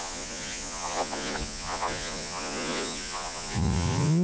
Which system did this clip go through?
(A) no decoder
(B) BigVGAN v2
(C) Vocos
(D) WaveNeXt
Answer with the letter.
C